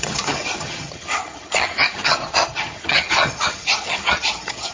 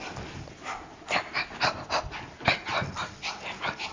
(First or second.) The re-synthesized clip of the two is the first